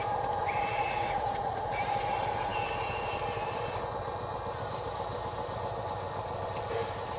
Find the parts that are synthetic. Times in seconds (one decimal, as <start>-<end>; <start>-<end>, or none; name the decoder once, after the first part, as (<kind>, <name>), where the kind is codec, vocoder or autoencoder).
0.7-1.8 (vocoder, Vocos)